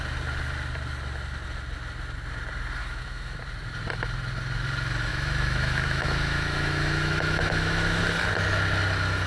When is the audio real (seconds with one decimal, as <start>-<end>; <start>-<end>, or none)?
0.0-2.8; 3.4-5.1; 8.0-9.3